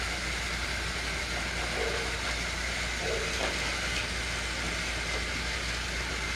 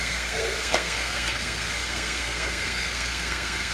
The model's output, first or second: second